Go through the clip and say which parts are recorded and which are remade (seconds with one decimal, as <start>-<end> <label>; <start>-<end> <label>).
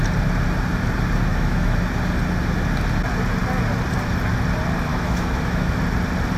0.0-1.3 recorded; 1.3-1.8 remade; 1.8-4.9 recorded; 4.9-5.8 remade; 5.8-6.4 recorded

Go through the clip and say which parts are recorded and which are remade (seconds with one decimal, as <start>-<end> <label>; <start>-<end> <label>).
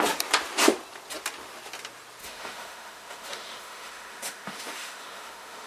0.0-2.2 recorded; 2.2-5.7 remade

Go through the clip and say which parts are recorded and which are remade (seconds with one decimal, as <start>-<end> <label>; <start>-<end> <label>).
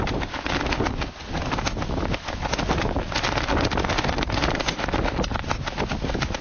0.0-6.4 recorded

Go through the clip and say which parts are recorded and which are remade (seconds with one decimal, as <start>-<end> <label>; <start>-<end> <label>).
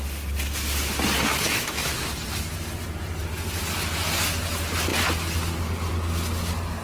0.0-1.3 recorded; 1.3-2.1 remade; 2.1-6.8 recorded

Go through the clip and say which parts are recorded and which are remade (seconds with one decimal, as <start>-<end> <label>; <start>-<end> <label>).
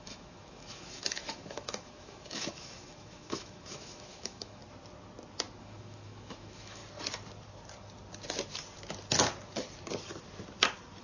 0.0-4.6 remade; 4.6-5.6 recorded; 5.6-6.8 remade; 6.8-11.0 recorded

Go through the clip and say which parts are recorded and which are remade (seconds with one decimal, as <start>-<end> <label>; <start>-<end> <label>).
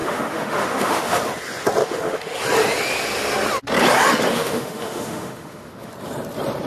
0.0-1.2 remade; 1.2-1.8 recorded; 1.8-2.4 remade; 2.4-4.3 recorded; 4.3-5.9 remade; 5.9-6.7 recorded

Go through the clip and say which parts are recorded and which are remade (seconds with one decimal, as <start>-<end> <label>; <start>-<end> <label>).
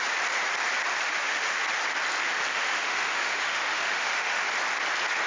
0.0-1.1 recorded; 1.1-1.6 remade; 1.6-2.5 recorded; 2.5-4.5 remade; 4.5-5.3 recorded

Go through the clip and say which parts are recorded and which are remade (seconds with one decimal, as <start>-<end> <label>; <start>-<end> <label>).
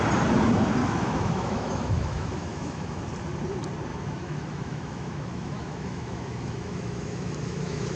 0.0-0.8 recorded; 0.8-3.0 remade; 3.0-3.9 recorded; 3.9-8.0 remade